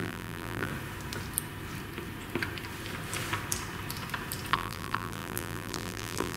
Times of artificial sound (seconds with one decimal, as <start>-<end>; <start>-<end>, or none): 0.0-0.7; 4.5-6.4